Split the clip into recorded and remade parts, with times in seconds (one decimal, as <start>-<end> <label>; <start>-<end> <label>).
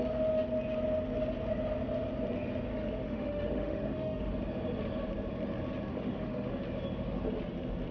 0.0-2.7 recorded; 2.7-4.3 remade; 4.3-5.9 recorded; 5.9-6.6 remade; 6.6-7.9 recorded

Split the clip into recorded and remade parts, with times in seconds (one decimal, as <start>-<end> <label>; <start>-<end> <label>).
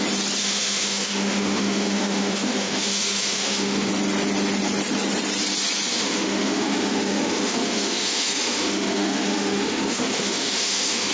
0.0-0.4 recorded; 0.4-3.9 remade; 3.9-5.9 recorded; 5.9-11.1 remade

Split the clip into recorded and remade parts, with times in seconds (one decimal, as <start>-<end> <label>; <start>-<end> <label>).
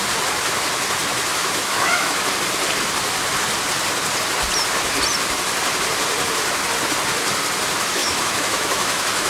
0.0-1.3 recorded; 1.3-2.2 remade; 2.2-8.0 recorded; 8.0-9.3 remade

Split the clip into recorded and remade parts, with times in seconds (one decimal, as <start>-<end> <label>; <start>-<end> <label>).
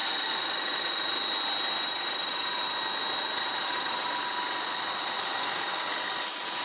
0.0-6.6 recorded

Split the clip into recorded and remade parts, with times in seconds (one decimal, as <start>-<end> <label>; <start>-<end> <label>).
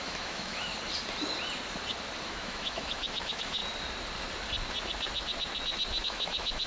0.0-0.7 remade; 0.7-2.2 recorded; 2.2-3.6 remade; 3.6-6.0 recorded; 6.0-6.7 remade